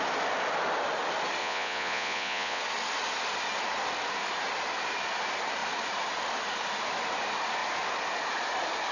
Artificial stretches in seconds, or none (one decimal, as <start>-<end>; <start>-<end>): 1.4-2.6